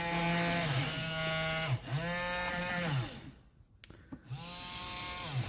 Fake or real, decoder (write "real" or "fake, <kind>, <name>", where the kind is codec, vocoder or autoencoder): real